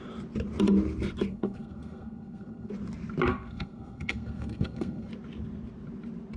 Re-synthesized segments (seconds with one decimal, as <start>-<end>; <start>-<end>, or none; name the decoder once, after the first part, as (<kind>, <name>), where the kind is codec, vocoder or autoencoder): 1.3-2.7 (codec, SNAC); 3.3-5.1